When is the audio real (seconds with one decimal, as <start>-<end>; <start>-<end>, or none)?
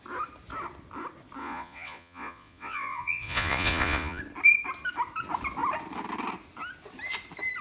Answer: 0.0-1.4; 4.2-7.6